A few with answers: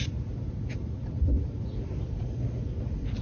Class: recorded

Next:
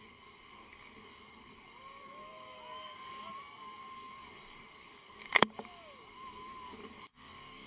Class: remade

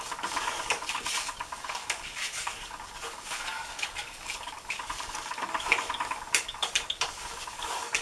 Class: remade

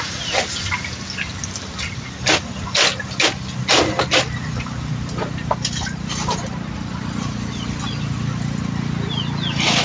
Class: recorded